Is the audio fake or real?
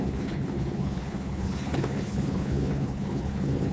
fake